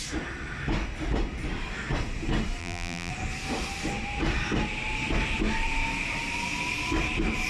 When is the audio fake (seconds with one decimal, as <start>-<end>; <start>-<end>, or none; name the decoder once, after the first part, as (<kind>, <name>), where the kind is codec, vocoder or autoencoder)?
2.6-3.1 (vocoder, BigVGAN v2)